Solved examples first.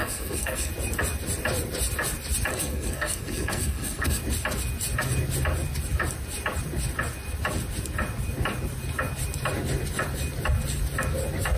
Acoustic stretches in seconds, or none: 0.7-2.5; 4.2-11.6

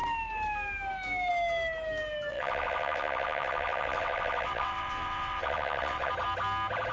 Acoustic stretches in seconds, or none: 0.0-2.3; 6.1-6.9

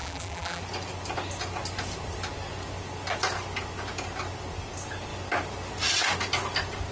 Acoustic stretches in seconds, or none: 0.6-6.9